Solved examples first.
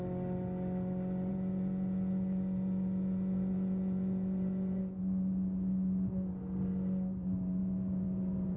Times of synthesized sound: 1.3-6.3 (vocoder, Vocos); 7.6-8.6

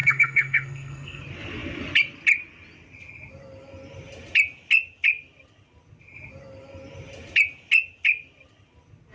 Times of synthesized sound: 0.0-1.2 (codec, SNAC)

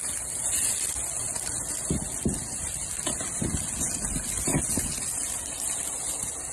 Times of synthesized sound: none

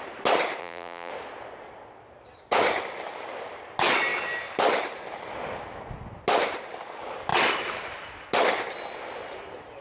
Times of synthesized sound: 0.6-1.1 (vocoder, BigVGAN v2)

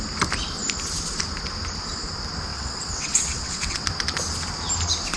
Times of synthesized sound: 2.5-3.9 (vocoder, WaveNeXt)

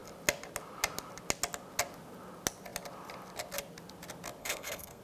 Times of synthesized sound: 4.4-5.0 (codec, SNAC)